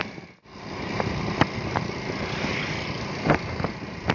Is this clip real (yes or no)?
yes